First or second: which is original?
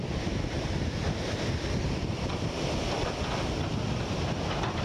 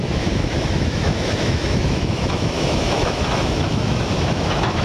first